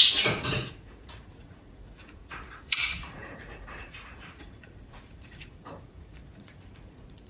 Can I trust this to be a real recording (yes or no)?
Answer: no